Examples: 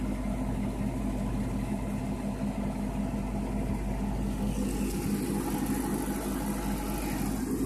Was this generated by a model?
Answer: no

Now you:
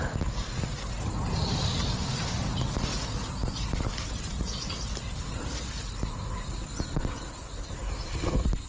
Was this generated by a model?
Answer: no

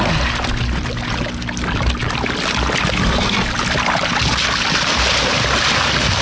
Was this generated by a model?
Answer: no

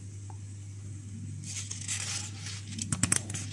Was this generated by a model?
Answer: no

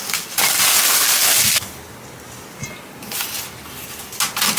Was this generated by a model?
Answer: no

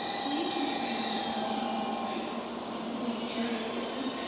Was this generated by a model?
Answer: no